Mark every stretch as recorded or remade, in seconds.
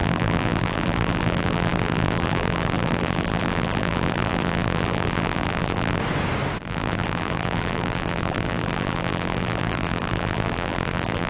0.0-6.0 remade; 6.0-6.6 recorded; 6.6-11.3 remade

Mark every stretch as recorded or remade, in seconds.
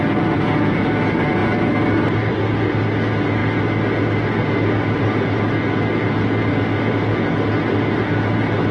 0.0-8.7 recorded